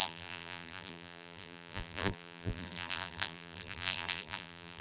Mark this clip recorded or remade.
remade